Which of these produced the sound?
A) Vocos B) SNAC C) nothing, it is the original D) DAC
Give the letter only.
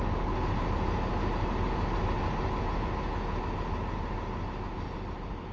C